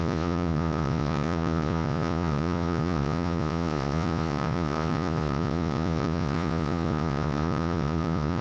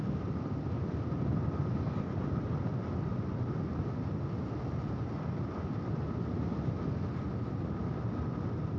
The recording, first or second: second